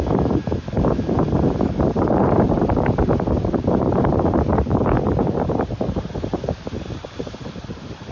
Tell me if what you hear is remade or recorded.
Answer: remade